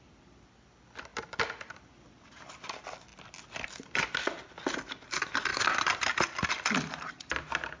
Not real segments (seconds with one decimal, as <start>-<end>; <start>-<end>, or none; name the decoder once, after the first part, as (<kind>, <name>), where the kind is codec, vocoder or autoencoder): none